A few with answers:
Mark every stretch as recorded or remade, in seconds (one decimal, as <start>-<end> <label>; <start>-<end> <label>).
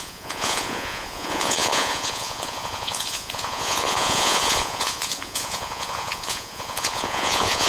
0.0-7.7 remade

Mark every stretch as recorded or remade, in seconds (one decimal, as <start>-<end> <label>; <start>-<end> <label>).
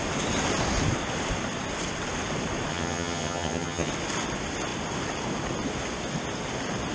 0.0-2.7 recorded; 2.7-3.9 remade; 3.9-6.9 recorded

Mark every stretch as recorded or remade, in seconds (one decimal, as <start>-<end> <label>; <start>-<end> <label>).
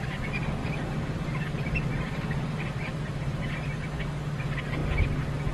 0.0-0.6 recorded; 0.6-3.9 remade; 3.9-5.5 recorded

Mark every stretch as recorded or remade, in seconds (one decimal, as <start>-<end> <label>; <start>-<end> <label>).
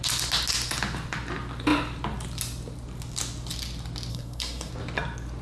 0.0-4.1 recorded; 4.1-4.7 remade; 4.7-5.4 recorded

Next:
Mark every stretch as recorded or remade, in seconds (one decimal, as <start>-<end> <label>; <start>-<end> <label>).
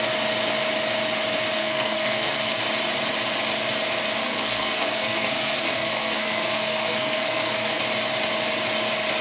0.0-1.6 recorded; 1.6-2.6 remade; 2.6-4.2 recorded; 4.2-7.8 remade; 7.8-9.2 recorded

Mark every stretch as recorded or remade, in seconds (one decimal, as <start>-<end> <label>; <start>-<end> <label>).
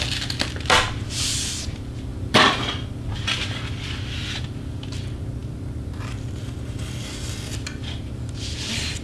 0.0-2.1 recorded; 2.1-2.6 remade; 2.6-9.0 recorded